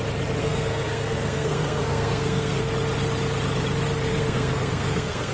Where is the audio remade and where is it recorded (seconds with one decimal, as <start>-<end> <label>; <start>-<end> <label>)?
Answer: 0.0-0.4 recorded; 0.4-2.7 remade; 2.7-4.1 recorded; 4.1-5.3 remade